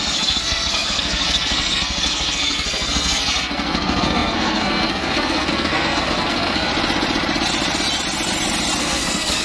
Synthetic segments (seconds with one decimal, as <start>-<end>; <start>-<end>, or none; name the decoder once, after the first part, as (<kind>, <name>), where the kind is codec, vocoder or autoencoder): 0.0-6.7 (codec, SNAC); 8.8-9.4